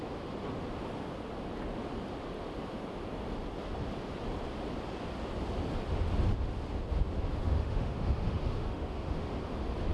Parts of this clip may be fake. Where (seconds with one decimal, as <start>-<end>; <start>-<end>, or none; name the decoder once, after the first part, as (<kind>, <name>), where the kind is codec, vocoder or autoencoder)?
7.4-9.3 (autoencoder, DAC-VAE)